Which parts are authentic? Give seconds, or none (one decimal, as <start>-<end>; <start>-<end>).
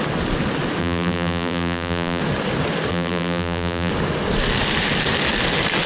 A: 0.0-0.8; 2.2-2.9; 3.9-5.9